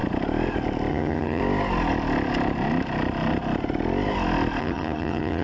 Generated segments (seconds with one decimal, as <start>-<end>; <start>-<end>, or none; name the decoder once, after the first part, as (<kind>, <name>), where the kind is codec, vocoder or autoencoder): 0.9-1.4 (vocoder, HiFi-GAN); 4.6-5.4